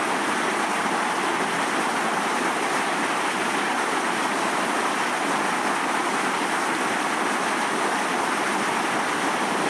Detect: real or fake real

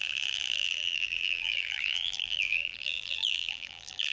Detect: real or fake fake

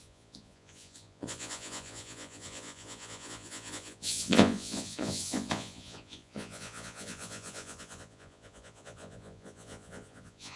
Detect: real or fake fake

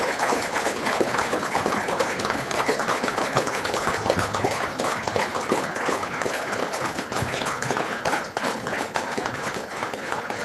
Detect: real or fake fake